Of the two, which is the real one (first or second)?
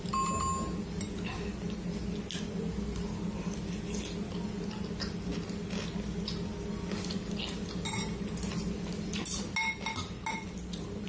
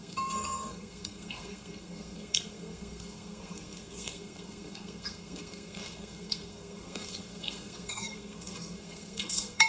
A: first